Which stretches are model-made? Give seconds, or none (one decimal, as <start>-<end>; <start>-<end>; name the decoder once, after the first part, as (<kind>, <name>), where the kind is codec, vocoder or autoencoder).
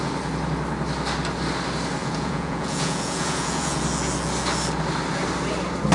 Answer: 2.0-3.8 (vocoder, Vocos)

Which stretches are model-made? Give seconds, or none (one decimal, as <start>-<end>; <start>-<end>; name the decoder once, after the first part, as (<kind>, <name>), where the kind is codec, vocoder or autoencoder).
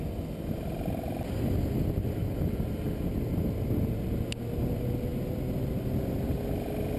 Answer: none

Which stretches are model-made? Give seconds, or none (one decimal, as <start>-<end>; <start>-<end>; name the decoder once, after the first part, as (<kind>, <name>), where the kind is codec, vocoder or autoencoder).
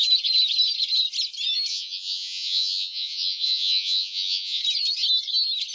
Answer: 1.7-4.6 (vocoder, Vocos)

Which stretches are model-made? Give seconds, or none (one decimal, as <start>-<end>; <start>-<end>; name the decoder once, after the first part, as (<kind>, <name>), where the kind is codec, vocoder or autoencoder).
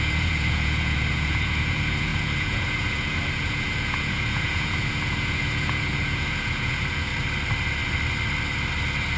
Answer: 0.0-7.1 (vocoder, Vocos)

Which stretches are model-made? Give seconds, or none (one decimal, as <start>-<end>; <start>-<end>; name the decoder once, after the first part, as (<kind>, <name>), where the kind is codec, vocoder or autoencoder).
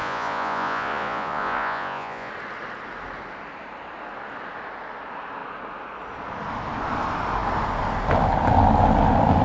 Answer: 0.0-2.3 (vocoder, Vocos)